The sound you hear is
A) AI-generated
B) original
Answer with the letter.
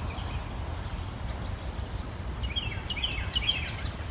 B